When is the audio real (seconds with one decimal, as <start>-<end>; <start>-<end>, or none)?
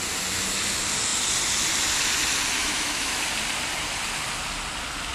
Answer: 0.0-2.6; 3.2-5.1